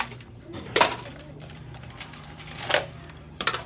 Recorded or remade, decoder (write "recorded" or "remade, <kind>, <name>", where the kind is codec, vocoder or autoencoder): remade, vocoder, BigVGAN v2